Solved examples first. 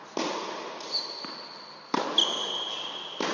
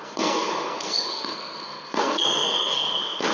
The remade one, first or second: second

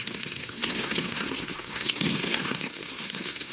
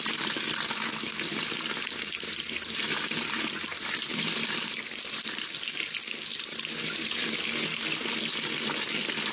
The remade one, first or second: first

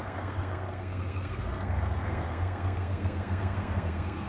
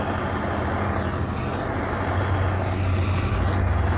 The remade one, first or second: first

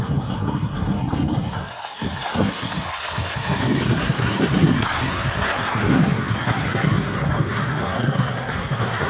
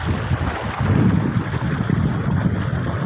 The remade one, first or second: first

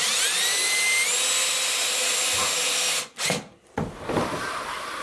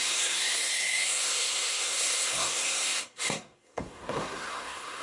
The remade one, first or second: second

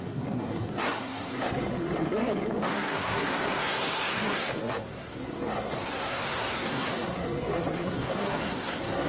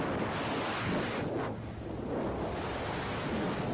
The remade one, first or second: first